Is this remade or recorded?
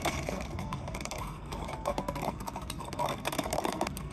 remade